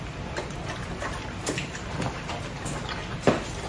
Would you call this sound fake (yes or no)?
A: no